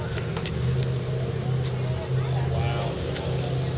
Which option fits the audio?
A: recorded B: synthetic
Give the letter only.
A